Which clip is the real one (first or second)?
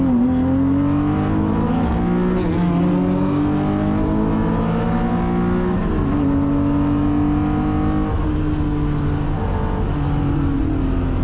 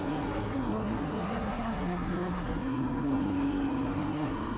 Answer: first